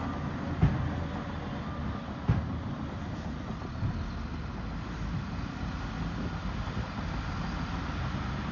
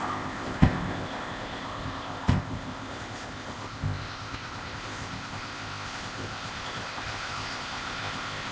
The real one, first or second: first